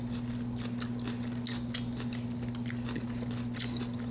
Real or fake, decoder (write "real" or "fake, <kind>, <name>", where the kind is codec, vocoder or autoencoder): real